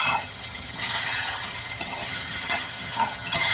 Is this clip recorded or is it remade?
remade